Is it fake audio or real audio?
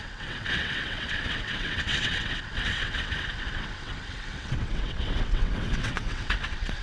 fake